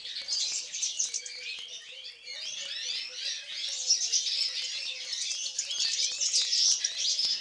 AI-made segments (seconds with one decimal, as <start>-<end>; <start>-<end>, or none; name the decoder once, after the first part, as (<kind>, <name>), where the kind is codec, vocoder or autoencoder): none